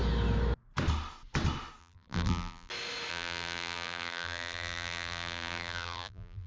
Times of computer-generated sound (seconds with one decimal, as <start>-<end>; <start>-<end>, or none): 1.8-2.7; 3.1-6.5